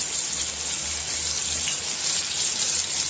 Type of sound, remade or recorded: recorded